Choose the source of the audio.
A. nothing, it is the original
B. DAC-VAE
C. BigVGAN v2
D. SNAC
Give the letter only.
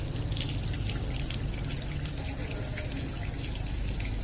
A